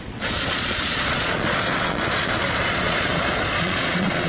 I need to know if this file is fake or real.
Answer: fake